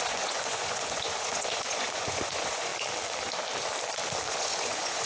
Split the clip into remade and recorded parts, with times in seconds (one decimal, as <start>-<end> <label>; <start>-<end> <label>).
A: 0.0-2.7 remade; 2.7-4.3 recorded; 4.3-5.1 remade